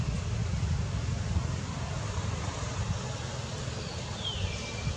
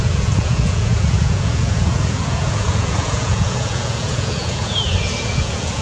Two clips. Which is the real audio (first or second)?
first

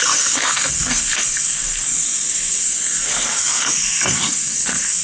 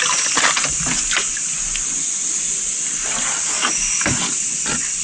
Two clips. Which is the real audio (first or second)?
second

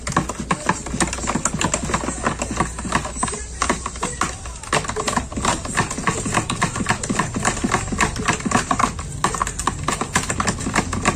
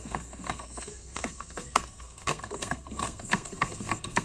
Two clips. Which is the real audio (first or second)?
first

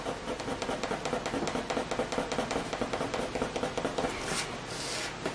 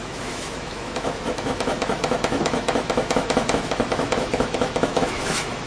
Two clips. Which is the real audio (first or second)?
first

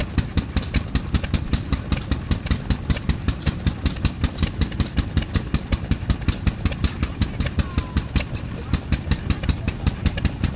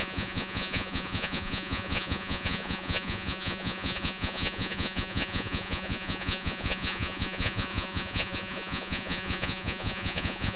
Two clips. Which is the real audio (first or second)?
first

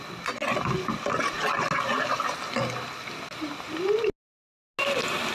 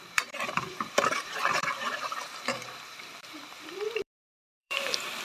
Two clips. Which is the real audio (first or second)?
first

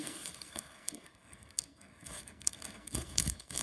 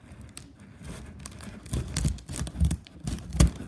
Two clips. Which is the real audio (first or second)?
second